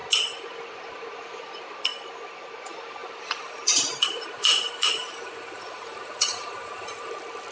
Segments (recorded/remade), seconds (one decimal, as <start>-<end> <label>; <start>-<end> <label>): 0.0-3.0 recorded; 3.0-7.1 remade; 7.1-7.5 recorded